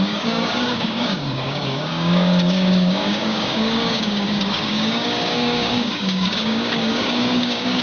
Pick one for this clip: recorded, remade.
remade